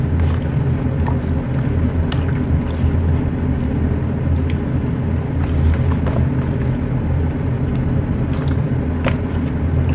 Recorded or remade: recorded